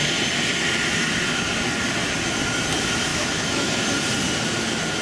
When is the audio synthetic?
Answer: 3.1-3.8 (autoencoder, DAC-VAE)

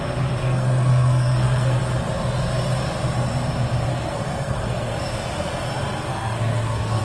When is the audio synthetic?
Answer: 0.4-1.8 (codec, SNAC); 3.9-5.1; 6.1-7.0

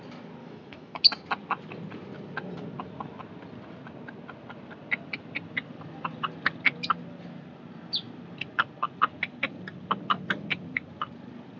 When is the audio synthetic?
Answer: 0.4-1.0 (autoencoder, DAC-VAE)